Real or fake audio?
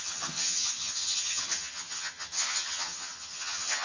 fake